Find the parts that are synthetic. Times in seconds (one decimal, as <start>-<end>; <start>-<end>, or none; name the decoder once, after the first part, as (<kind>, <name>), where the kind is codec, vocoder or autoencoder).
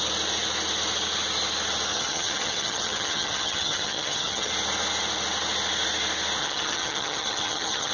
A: 1.9-4.5 (vocoder, HiFi-GAN); 6.4-7.9